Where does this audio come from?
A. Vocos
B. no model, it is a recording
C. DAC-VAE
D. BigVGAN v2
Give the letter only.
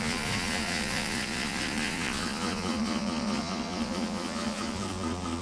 A